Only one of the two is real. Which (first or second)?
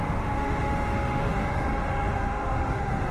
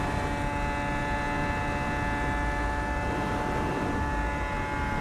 second